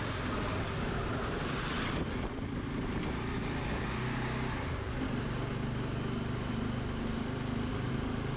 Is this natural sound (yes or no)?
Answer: yes